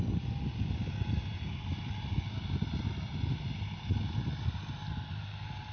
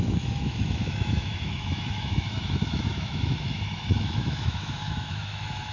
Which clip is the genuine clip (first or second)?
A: first